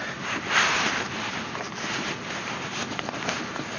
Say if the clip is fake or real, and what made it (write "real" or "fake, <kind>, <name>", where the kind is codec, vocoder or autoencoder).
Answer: real